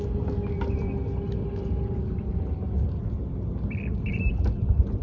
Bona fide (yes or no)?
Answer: yes